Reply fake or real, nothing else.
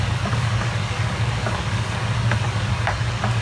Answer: fake